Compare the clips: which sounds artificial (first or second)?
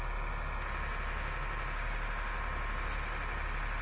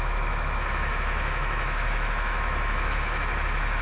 second